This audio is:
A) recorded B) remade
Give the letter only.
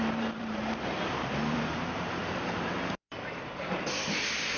B